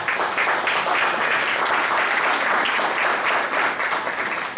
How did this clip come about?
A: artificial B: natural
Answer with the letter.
B